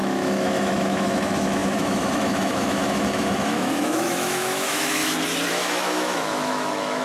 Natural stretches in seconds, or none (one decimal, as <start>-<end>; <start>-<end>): 5.0-5.5